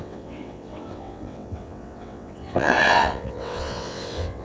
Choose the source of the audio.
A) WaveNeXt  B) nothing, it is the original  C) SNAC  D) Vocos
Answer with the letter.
A